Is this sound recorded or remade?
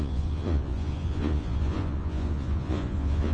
remade